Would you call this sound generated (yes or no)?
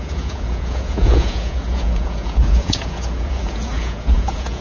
yes